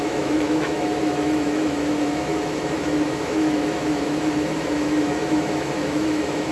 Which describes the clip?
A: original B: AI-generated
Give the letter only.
B